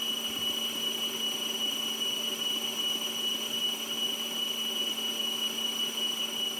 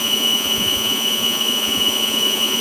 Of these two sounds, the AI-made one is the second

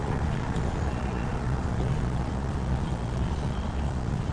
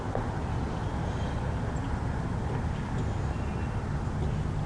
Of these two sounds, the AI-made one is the first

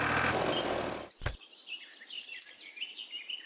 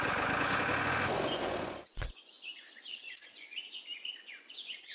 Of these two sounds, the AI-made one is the second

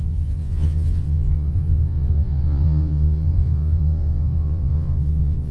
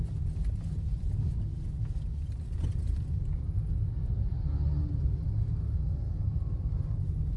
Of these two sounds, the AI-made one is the first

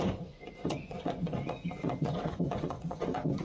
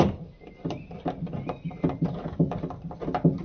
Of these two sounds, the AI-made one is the first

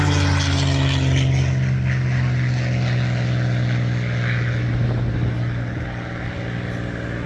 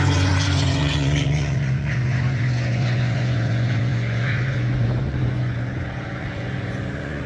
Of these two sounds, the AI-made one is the second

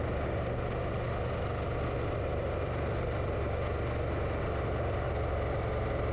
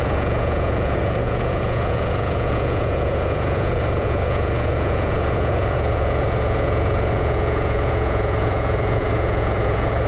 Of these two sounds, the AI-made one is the second